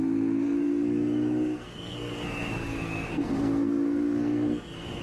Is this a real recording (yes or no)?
no